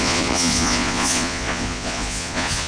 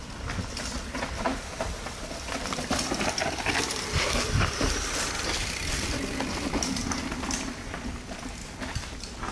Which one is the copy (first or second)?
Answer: first